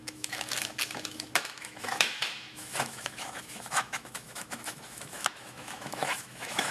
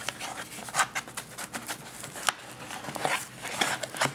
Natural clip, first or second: second